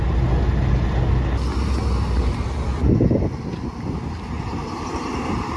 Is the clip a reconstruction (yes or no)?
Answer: no